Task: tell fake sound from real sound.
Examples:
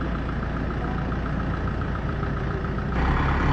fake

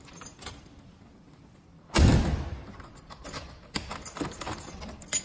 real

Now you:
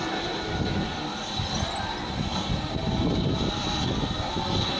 real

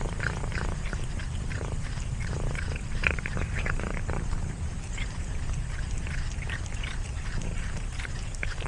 fake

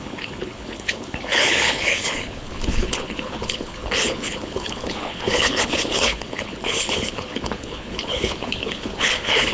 fake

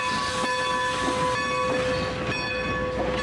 real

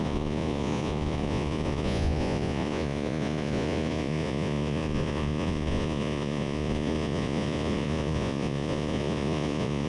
fake